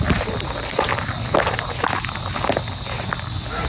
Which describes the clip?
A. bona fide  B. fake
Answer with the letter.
A